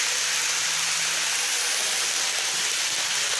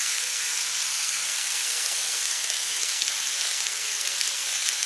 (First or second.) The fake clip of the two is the second